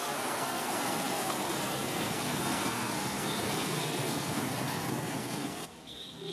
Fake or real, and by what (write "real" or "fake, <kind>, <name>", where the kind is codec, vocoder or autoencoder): fake, codec, SNAC